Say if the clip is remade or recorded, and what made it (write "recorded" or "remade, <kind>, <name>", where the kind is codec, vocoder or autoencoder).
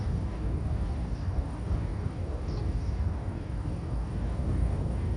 remade, codec, DAC